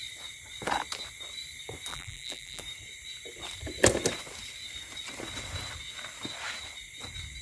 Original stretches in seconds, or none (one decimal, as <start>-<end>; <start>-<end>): 0.0-1.9; 2.6-7.4